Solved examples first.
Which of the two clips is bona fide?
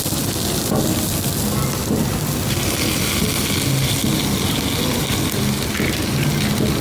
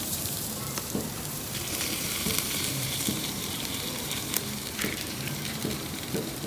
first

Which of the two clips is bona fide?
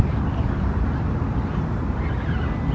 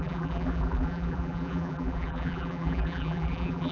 first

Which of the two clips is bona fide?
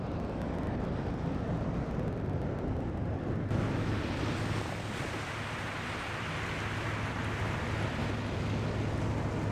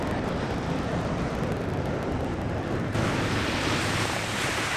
first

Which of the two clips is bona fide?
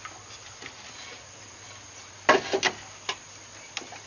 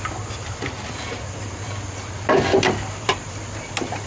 first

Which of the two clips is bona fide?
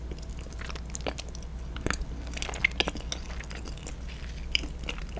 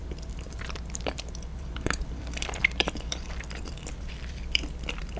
first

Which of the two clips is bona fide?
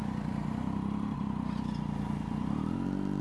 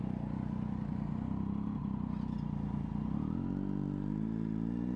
second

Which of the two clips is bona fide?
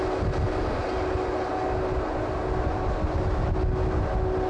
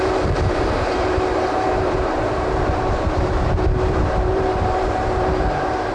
first